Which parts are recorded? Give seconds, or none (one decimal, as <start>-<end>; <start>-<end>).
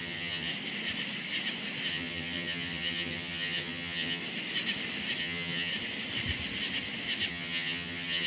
0.5-1.9; 4.2-5.2; 5.7-7.3